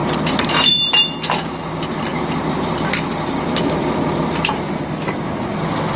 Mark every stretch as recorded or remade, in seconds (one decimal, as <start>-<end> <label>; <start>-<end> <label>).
0.0-1.1 remade; 1.1-2.1 recorded; 2.1-4.2 remade; 4.2-6.0 recorded